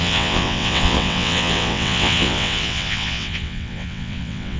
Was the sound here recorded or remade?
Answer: remade